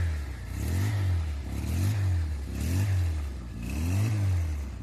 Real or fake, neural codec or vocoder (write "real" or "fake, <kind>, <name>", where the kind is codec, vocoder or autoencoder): real